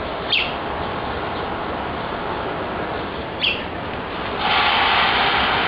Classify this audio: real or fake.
real